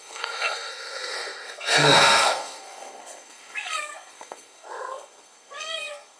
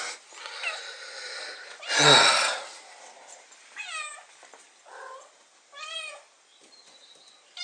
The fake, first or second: first